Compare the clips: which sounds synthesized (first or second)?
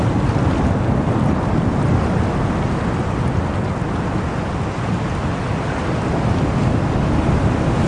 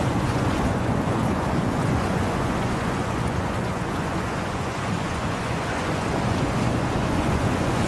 second